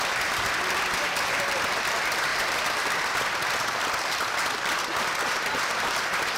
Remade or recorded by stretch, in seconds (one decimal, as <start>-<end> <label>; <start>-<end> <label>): 0.0-6.4 remade